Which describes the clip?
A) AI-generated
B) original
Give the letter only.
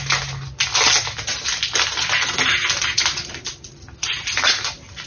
B